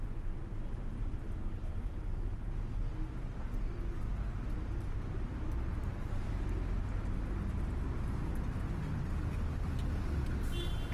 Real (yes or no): yes